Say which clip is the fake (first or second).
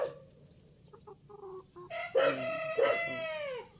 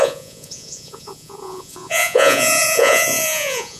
second